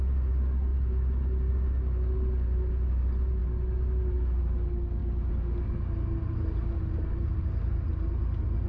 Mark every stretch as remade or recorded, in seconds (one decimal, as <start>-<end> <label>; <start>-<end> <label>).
0.0-8.7 recorded